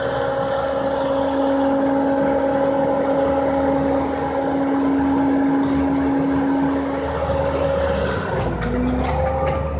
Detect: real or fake real